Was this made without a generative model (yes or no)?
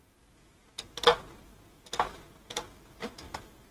yes